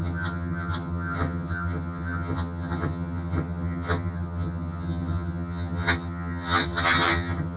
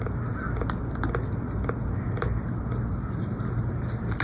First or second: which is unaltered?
second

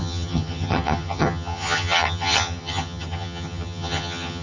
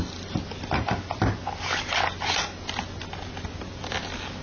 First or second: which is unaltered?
second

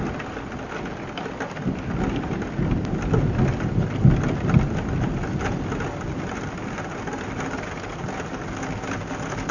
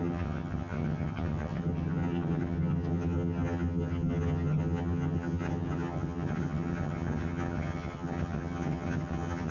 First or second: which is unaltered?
first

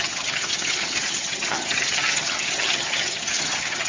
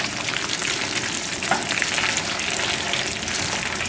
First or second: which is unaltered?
second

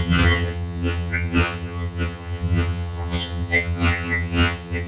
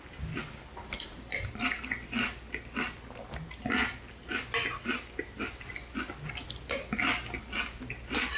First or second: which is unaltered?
second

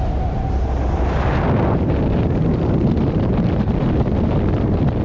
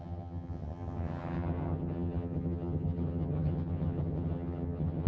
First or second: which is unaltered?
first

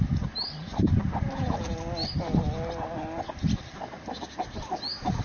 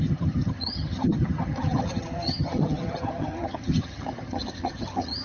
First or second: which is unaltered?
first